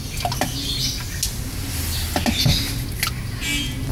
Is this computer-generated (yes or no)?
no